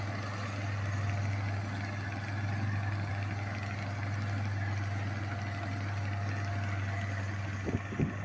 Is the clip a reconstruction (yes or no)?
no